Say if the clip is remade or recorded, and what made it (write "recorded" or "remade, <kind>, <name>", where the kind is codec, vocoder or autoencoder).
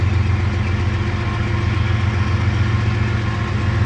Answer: recorded